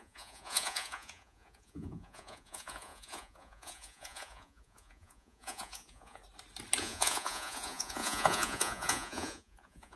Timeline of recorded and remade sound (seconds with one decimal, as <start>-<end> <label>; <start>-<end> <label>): 0.0-6.2 remade; 6.2-6.8 recorded; 6.8-10.0 remade